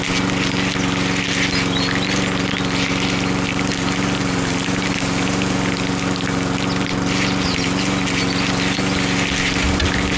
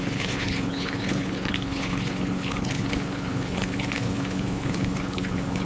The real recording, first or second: first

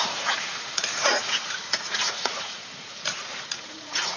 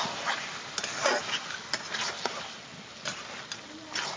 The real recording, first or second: second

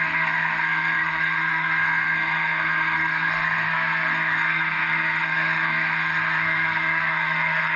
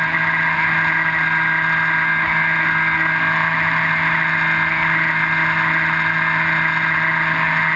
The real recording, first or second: second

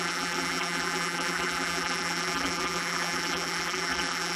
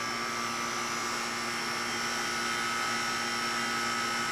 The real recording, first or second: second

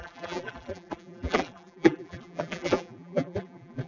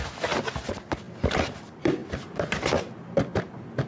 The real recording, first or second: second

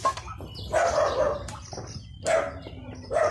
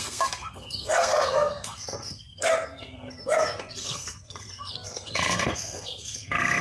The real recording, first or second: first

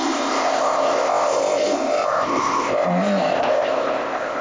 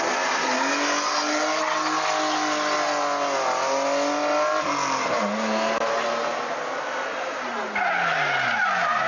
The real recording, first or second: second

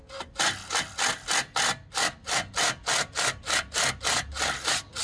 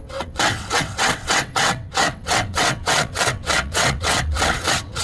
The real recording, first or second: first